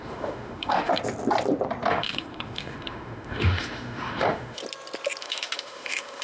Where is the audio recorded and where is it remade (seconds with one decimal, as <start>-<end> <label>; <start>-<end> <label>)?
0.0-0.9 remade; 0.9-1.9 recorded; 1.9-4.6 remade; 4.6-5.2 recorded; 5.2-6.2 remade